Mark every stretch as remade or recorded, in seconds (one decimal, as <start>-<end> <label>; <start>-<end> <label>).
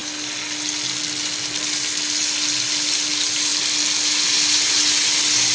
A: 0.0-5.5 recorded